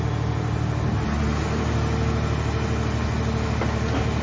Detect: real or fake real